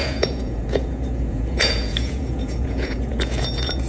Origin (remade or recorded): remade